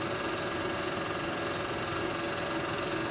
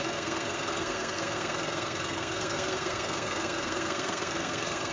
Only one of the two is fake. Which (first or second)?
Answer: second